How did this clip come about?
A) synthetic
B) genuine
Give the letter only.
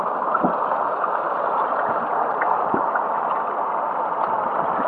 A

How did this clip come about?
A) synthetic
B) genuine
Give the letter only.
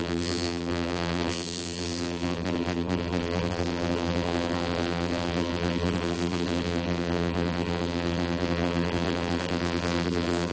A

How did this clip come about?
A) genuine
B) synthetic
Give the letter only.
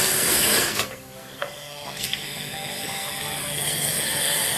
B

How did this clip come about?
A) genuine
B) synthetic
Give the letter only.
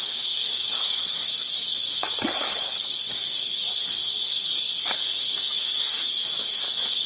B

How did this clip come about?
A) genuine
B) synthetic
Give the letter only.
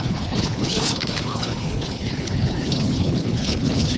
B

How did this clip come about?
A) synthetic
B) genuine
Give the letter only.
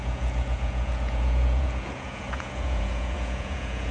A